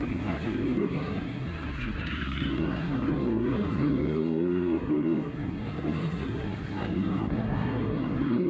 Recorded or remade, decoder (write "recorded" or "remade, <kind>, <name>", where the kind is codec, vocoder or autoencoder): remade, codec, SNAC